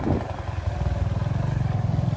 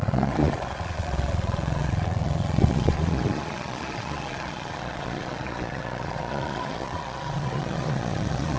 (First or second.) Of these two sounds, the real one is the first